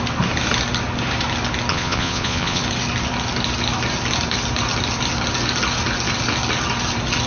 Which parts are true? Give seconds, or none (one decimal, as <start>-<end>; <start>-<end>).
0.0-1.7; 2.6-7.3